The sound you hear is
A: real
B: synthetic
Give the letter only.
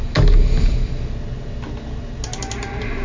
A